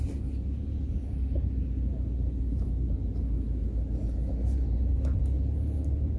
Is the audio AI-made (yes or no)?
no